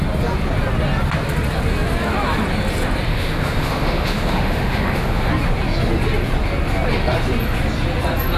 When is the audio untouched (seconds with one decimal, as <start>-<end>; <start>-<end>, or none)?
0.0-3.1; 5.3-8.4